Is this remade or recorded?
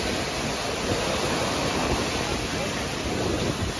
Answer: recorded